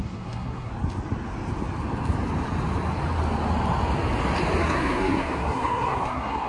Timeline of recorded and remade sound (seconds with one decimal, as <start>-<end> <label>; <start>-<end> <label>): 0.0-0.7 remade; 0.7-4.6 recorded; 4.6-6.5 remade